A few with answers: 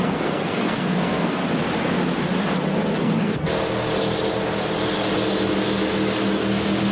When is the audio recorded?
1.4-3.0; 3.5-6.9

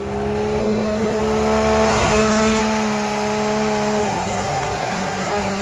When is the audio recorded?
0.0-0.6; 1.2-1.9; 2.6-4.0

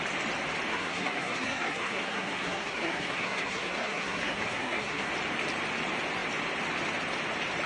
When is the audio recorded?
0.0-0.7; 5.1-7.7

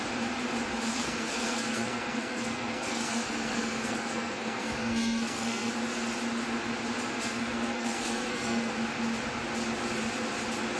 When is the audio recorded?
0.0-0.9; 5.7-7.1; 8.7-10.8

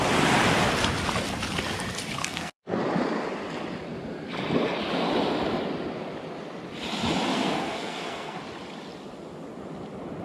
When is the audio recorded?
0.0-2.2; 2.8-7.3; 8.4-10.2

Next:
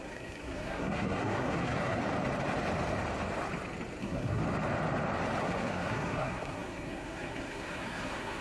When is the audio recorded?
2.0-4.0; 4.4-5.4